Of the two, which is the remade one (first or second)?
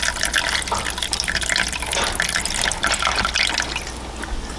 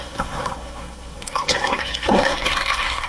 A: second